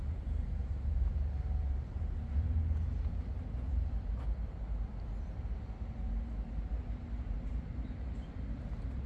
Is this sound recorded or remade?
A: remade